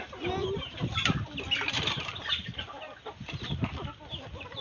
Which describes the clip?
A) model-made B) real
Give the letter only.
B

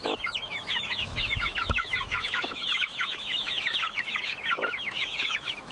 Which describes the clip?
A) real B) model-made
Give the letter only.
B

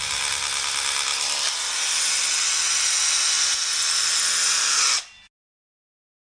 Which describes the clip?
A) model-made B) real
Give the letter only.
B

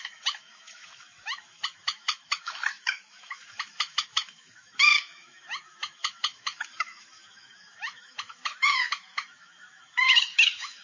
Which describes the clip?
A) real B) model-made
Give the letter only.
B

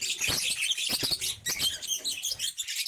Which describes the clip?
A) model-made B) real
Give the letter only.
B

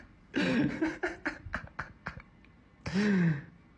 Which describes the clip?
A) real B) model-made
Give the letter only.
A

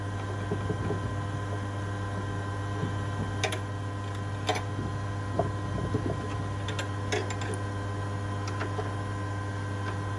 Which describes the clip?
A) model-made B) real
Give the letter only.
B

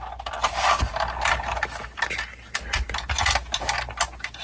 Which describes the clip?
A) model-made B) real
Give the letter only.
B